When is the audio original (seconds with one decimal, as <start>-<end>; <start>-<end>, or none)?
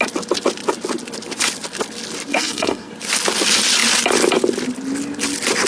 0.0-2.3; 2.9-5.7